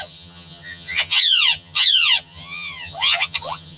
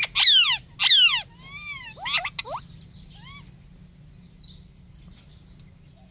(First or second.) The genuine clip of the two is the second